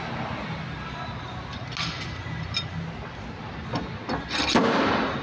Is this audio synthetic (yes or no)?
no